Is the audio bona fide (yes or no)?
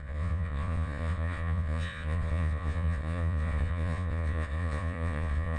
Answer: no